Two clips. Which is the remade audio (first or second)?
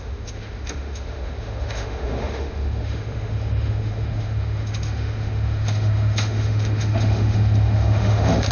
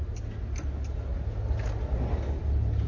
first